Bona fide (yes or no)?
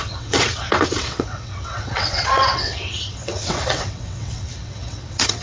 no